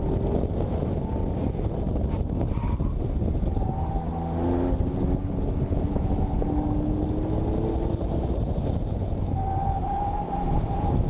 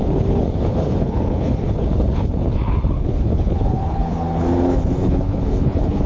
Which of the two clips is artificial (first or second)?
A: second